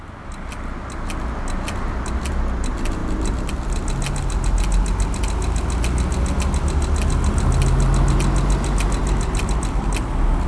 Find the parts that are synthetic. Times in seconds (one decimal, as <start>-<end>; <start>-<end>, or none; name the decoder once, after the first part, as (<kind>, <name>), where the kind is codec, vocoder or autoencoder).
3.0-3.5 (vocoder, BigVGAN v2); 9.0-9.9